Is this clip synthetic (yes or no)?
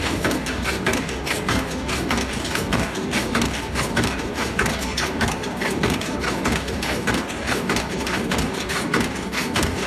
yes